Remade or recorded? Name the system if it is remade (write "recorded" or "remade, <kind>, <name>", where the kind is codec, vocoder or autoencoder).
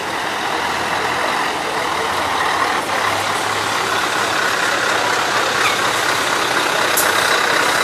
recorded